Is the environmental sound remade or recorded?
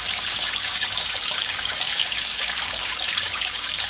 remade